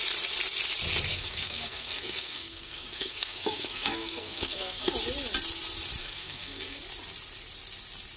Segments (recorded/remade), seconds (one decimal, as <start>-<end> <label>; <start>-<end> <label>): 0.0-1.1 recorded; 1.1-4.9 remade; 4.9-6.0 recorded; 6.0-6.8 remade; 6.8-8.2 recorded